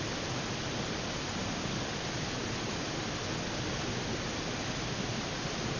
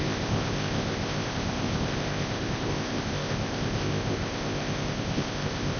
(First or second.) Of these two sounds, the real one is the first